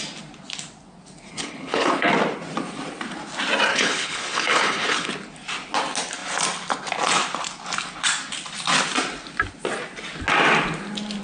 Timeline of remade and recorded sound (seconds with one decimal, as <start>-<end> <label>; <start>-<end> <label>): 0.0-1.3 recorded; 1.3-2.1 remade; 2.1-3.7 recorded; 3.7-5.1 remade; 5.1-11.2 recorded